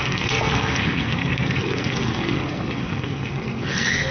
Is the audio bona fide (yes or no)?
no